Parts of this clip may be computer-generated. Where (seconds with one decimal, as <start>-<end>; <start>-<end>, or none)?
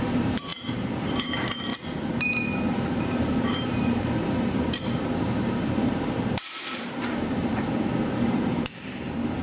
0.0-1.7; 3.0-9.4